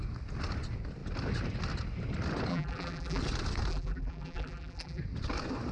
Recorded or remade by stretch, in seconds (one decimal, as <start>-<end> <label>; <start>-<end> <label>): 0.0-2.5 recorded; 2.5-3.2 remade; 3.2-3.7 recorded; 3.7-5.0 remade; 5.0-5.7 recorded